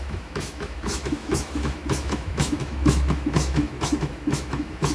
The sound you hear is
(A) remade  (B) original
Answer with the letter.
A